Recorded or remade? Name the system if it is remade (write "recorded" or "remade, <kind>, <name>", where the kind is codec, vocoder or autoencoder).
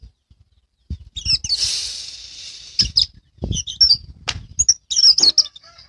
recorded